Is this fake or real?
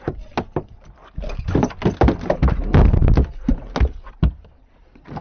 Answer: real